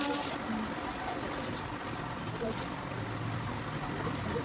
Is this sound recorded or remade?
recorded